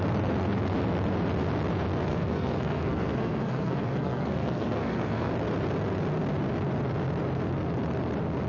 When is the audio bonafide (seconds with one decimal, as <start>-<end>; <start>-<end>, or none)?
0.0-2.1; 5.3-8.5